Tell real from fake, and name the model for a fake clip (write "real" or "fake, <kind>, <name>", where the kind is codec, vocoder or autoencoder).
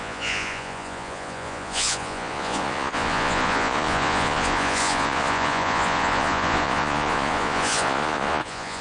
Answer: fake, vocoder, Vocos